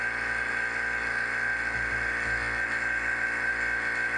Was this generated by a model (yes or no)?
no